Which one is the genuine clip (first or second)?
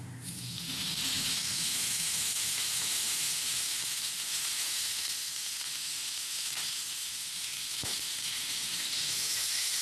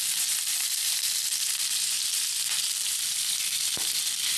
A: second